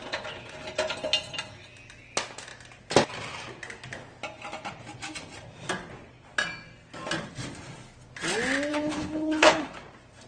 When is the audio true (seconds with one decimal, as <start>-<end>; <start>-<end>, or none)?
0.0-8.7; 9.7-10.3